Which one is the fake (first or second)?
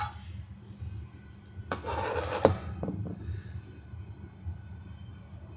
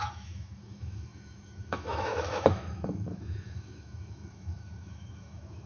second